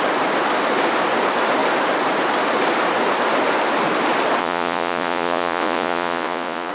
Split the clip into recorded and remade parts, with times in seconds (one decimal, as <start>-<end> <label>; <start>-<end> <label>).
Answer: 0.0-4.4 recorded; 4.4-6.7 remade